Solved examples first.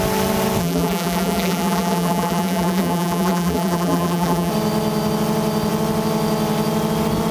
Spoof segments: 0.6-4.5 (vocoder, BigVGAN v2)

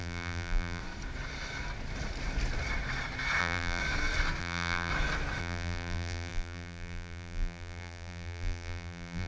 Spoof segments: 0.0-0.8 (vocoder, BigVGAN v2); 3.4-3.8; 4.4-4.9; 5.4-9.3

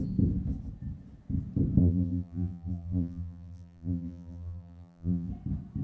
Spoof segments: 1.8-5.3 (vocoder, BigVGAN v2)

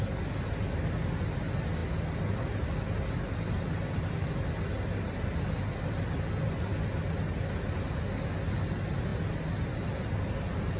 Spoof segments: none

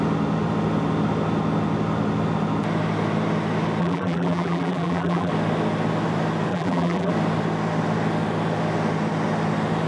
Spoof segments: 3.8-5.3 (vocoder, BigVGAN v2); 6.5-7.1

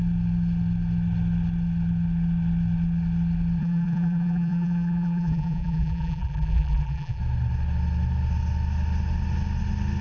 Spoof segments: 3.6-7.2 (vocoder, BigVGAN v2)

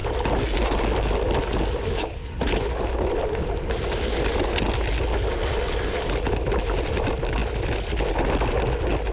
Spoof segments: none